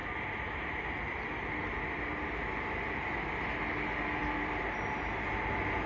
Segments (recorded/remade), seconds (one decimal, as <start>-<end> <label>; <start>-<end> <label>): 0.0-2.6 remade; 2.6-4.2 recorded; 4.2-5.4 remade; 5.4-5.9 recorded